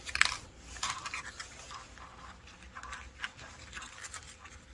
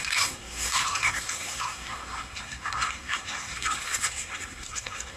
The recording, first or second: first